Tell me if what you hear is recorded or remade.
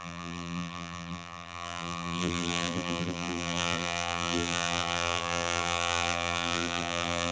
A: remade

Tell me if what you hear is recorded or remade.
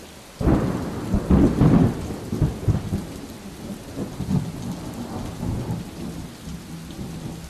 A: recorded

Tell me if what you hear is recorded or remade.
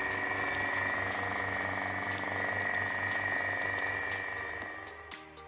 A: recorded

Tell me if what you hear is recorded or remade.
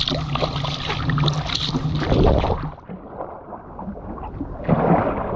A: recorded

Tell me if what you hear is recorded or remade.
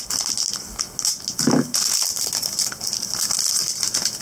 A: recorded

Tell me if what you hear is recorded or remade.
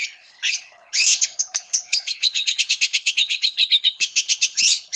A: remade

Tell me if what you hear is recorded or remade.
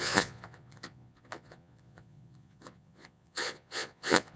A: remade